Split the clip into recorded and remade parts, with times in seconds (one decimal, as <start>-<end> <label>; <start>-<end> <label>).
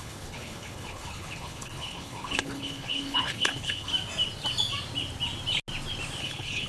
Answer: 0.0-3.9 remade; 3.9-6.2 recorded; 6.2-6.7 remade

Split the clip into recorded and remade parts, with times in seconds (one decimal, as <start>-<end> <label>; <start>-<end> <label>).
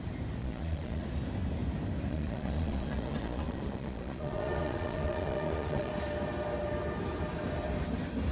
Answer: 0.0-0.4 recorded; 0.4-1.0 remade; 1.0-2.1 recorded; 2.1-5.9 remade; 5.9-8.3 recorded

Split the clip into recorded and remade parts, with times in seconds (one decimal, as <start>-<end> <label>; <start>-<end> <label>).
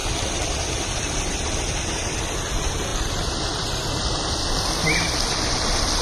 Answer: 0.0-6.0 recorded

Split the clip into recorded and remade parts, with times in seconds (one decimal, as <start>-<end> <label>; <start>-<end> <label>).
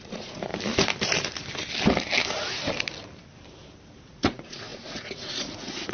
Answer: 0.0-0.5 remade; 0.5-4.0 recorded; 4.0-5.9 remade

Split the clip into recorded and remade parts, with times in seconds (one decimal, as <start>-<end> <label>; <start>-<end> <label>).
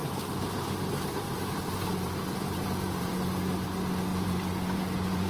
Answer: 0.0-3.1 remade; 3.1-4.1 recorded; 4.1-5.3 remade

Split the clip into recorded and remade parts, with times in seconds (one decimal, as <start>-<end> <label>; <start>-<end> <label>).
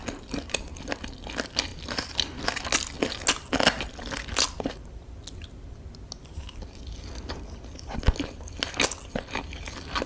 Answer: 0.0-10.1 recorded